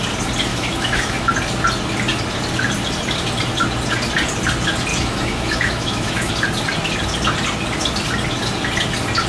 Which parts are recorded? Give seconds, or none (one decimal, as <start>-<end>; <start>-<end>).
0.0-0.5; 1.3-4.9; 6.3-9.3